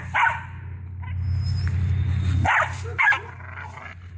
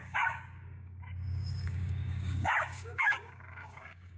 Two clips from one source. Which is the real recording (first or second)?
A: first